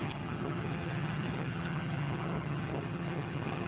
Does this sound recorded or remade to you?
remade